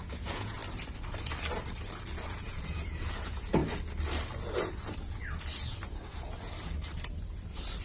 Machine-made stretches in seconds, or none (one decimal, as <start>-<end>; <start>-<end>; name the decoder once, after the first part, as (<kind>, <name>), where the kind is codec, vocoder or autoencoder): 0.0-0.6 (vocoder, Vocos); 2.3-3.6